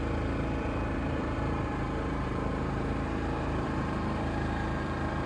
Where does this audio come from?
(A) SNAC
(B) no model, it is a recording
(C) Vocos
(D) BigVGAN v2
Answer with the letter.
D